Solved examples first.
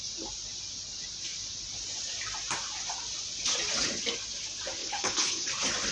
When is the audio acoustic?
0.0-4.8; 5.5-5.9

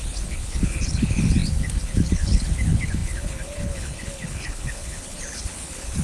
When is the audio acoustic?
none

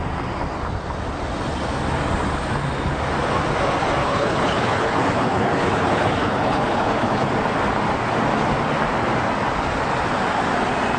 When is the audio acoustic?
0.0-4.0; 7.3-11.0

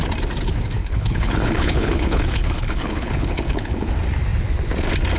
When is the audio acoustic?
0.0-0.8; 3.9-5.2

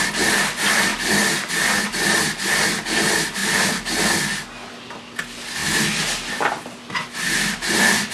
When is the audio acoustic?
0.0-8.1

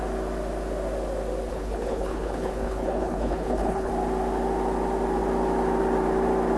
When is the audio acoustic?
0.0-1.5; 3.9-6.6